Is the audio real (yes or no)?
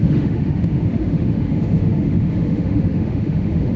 no